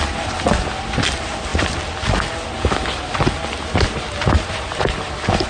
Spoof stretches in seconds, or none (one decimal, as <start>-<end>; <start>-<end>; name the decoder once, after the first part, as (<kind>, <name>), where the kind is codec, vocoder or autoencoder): none